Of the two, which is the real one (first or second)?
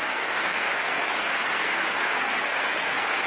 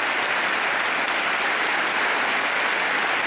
second